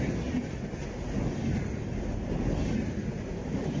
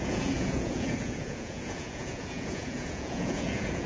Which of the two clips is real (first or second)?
first